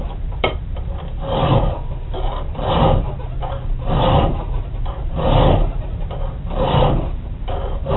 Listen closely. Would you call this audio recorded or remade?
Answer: remade